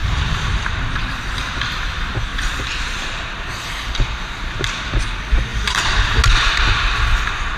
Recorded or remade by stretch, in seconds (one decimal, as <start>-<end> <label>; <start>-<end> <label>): 0.0-1.4 remade; 1.4-2.3 recorded; 2.3-3.5 remade; 3.5-5.5 recorded; 5.5-6.2 remade; 6.2-7.6 recorded